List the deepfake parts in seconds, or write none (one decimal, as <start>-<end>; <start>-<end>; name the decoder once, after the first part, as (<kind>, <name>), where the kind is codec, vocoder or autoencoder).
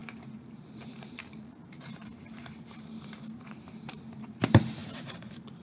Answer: 0.0-5.6 (vocoder, BigVGAN v2)